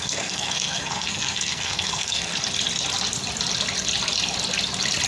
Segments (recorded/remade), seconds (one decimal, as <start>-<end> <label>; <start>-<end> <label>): 0.0-2.3 remade; 2.3-5.1 recorded